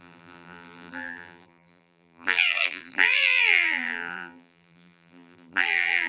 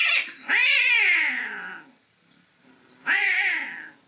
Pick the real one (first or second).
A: second